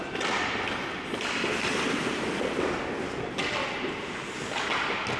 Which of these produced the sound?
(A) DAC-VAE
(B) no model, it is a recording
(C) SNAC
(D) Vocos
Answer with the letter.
B